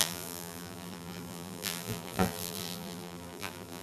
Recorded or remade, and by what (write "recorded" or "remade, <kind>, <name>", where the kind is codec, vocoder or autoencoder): remade, vocoder, BigVGAN v2